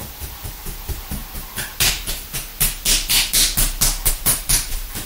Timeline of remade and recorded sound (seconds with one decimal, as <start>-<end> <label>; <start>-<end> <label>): 0.0-1.2 remade; 1.2-1.9 recorded; 1.9-2.5 remade; 2.5-4.1 recorded; 4.1-5.1 remade